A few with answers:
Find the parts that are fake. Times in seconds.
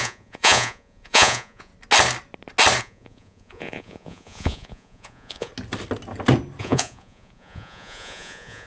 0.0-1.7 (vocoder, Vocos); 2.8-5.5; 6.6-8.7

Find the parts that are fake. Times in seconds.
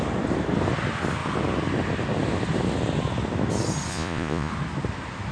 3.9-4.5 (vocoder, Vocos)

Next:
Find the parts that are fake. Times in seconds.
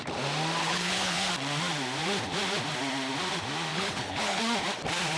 0.6-1.3 (codec, HILCodec); 3.7-4.4